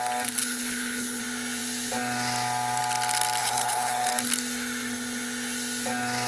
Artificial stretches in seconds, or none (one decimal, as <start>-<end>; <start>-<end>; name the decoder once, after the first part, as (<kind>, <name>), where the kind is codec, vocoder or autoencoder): 0.4-1.2 (codec, HILCodec); 3.4-4.1